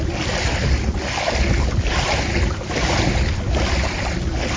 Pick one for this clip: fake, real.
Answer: real